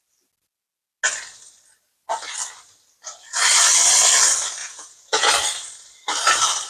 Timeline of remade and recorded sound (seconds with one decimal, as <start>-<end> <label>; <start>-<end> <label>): 0.0-4.6 recorded; 4.6-5.3 remade; 5.3-6.7 recorded